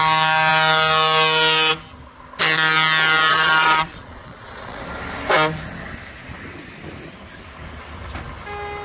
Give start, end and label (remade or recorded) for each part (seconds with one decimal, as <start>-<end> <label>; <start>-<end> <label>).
0.0-3.3 recorded; 3.3-4.8 remade; 4.8-8.8 recorded